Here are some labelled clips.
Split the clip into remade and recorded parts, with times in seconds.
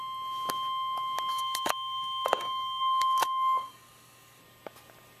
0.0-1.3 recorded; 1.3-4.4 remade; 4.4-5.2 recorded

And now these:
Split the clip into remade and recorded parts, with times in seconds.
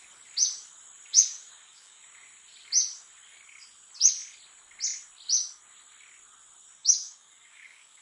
0.0-1.1 recorded; 1.1-2.0 remade; 2.0-6.8 recorded; 6.8-8.0 remade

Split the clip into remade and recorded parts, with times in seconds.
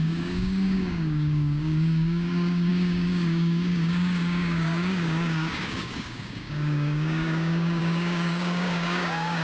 0.0-9.4 remade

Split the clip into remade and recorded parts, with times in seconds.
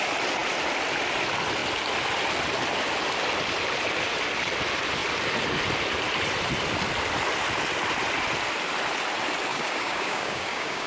0.0-9.5 recorded; 9.5-10.9 remade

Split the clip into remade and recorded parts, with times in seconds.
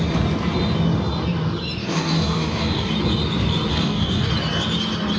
0.0-1.8 recorded; 1.8-2.9 remade; 2.9-3.7 recorded; 3.7-4.3 remade; 4.3-5.2 recorded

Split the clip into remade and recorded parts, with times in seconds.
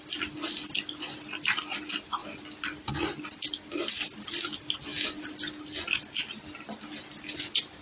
0.0-7.8 recorded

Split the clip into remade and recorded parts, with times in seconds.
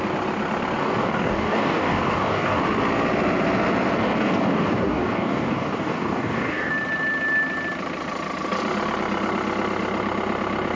0.0-0.8 recorded; 0.8-2.6 remade; 2.6-4.0 recorded; 4.0-6.7 remade; 6.7-10.8 recorded